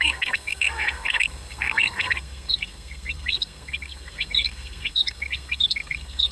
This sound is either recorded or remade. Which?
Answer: remade